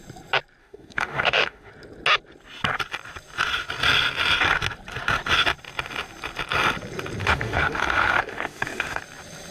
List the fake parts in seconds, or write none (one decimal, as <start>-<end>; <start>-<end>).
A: 0.6-1.7; 7.2-9.0